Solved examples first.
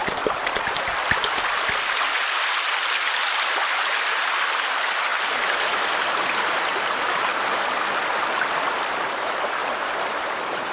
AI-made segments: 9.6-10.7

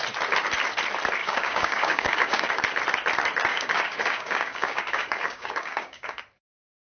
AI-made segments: 1.2-2.5; 3.5-6.2

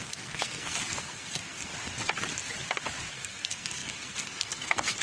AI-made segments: 0.0-1.7; 3.1-5.0

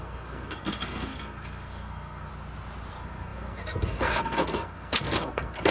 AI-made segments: 0.0-2.3; 2.9-5.7

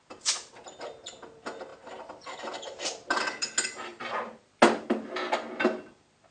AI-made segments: none

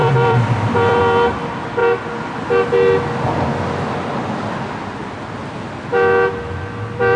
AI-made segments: 0.0-1.0

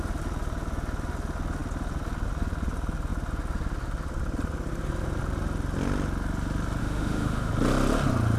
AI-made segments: 6.8-7.5

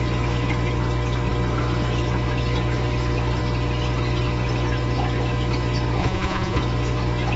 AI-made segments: 6.0-6.6